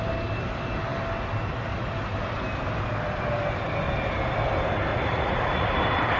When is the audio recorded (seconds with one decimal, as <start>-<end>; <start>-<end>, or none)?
0.0-4.9; 5.8-6.2